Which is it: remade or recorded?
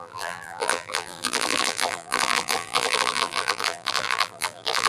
remade